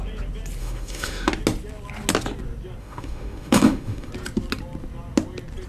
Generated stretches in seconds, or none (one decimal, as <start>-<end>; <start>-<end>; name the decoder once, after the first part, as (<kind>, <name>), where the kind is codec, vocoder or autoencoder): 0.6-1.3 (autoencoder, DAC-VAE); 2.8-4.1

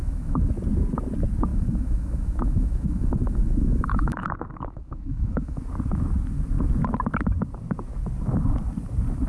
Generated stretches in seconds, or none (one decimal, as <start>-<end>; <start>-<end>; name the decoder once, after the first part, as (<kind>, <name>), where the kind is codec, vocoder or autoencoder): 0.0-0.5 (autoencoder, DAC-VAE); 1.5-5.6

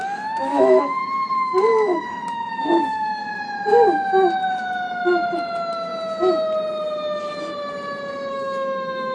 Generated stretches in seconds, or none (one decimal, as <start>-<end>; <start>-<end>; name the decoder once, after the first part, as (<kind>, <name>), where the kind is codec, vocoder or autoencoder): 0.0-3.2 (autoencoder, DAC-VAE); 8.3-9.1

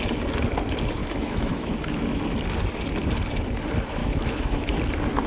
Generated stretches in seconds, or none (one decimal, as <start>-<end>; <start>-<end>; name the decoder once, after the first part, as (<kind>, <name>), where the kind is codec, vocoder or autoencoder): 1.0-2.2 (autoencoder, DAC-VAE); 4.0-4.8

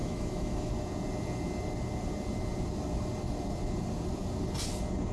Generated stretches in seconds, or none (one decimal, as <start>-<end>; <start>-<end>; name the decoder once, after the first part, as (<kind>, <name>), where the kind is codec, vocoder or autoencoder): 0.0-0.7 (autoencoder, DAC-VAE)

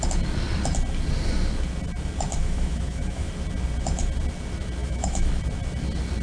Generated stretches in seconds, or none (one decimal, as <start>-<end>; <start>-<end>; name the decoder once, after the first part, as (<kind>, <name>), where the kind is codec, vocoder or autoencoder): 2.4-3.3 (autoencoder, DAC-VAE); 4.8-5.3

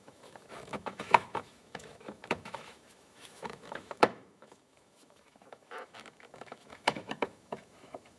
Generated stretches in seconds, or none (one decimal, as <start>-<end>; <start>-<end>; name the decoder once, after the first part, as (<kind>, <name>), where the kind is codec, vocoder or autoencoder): 0.0-8.2 (autoencoder, DAC-VAE)

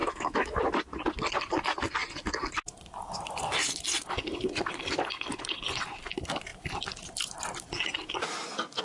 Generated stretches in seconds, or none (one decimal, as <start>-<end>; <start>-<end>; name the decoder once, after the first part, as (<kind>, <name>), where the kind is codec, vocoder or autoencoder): 0.0-0.6 (autoencoder, DAC-VAE)